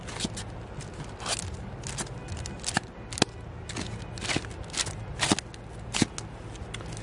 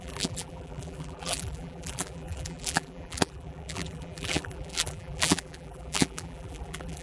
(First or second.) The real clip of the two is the first